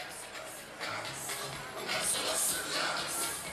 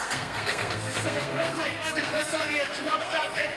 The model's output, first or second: second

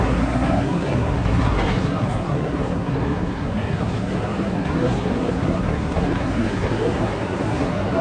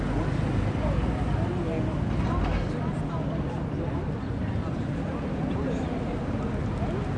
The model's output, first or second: first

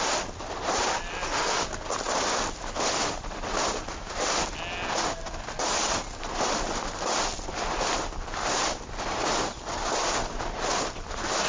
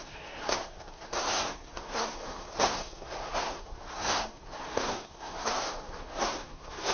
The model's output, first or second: second